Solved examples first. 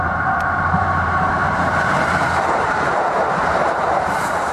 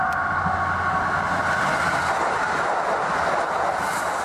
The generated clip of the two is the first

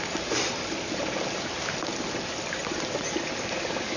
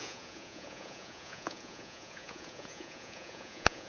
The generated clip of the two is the second